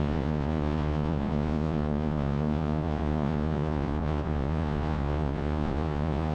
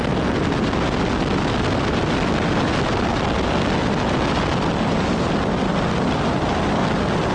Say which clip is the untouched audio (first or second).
second